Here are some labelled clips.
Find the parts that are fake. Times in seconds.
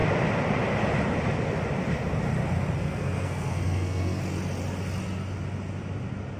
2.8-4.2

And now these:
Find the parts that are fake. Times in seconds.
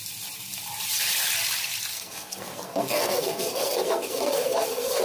1.9-5.0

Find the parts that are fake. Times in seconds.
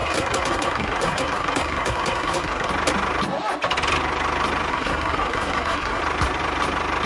0.0-2.7; 4.7-6.0